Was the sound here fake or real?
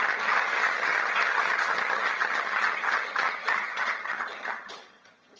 fake